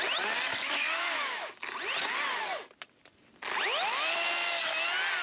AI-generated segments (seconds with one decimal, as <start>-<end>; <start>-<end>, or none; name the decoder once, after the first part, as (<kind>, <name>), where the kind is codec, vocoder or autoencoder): 0.5-1.5 (autoencoder, DAC-VAE)